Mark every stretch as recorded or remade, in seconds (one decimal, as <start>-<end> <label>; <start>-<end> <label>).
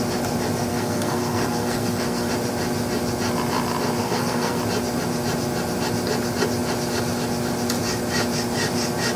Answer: 0.0-0.7 recorded; 0.7-2.3 remade; 2.3-4.0 recorded; 4.0-4.6 remade; 4.6-9.2 recorded